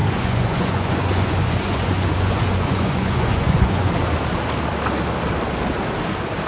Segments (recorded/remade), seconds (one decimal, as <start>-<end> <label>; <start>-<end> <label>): 0.0-3.9 remade; 3.9-6.5 recorded